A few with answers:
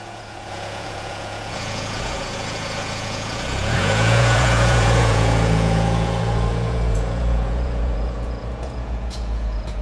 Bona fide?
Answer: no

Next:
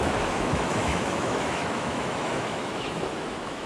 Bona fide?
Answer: no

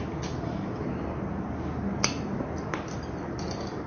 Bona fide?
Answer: yes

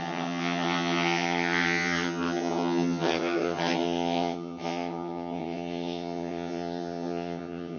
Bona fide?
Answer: no